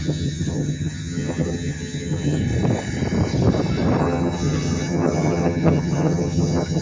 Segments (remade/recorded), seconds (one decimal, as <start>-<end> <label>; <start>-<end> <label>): 0.0-2.4 remade; 2.4-4.0 recorded; 4.0-6.8 remade